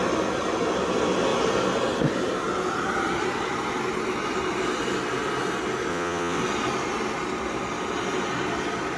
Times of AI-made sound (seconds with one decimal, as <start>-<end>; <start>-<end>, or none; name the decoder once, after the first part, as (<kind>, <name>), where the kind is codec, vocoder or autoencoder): 5.9-6.4 (vocoder, WaveNeXt)